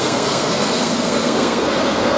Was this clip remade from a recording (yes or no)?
yes